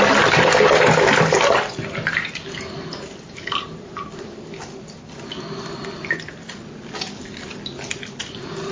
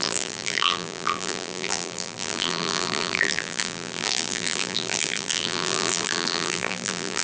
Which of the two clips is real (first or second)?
first